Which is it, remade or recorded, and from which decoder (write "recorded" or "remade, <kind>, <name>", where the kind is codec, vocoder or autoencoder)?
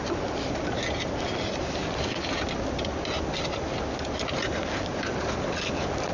recorded